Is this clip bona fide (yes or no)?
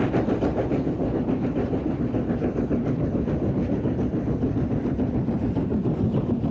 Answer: no